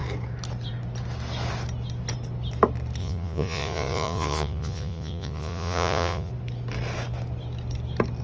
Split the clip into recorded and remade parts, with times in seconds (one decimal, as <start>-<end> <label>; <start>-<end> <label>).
0.0-3.0 recorded; 3.0-6.3 remade; 6.3-8.2 recorded